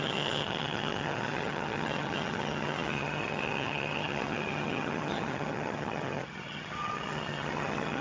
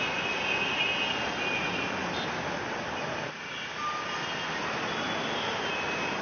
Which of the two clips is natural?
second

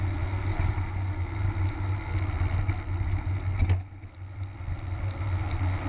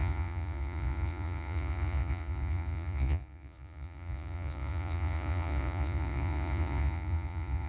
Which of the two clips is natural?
first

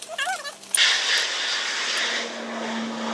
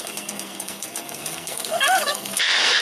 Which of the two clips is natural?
first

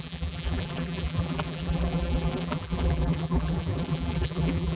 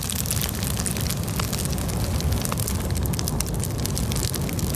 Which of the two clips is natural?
second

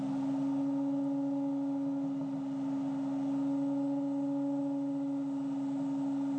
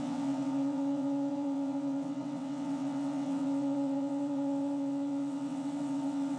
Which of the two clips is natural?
first